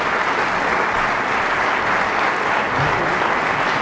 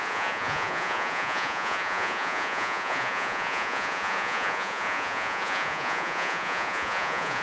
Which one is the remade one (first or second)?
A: second